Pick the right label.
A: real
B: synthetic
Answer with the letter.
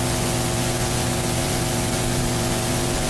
B